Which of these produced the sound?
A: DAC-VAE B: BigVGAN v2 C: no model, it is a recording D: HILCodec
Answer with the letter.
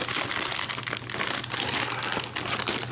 C